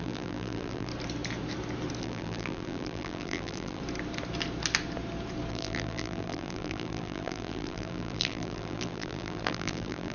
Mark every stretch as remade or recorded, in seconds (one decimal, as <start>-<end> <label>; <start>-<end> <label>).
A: 0.0-0.9 remade; 0.9-2.0 recorded; 2.0-3.8 remade; 3.8-5.5 recorded; 5.5-10.1 remade